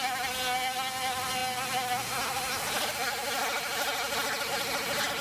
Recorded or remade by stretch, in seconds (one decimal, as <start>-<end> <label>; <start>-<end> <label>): 0.0-5.2 recorded